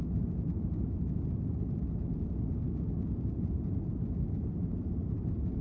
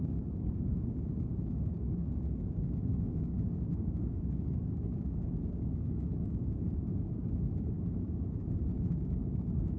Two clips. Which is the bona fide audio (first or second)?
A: first